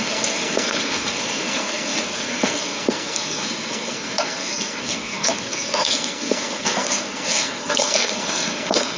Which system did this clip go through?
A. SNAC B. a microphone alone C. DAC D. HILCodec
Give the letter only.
A